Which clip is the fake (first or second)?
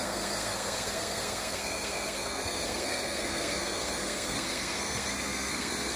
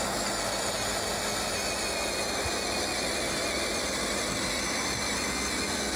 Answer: first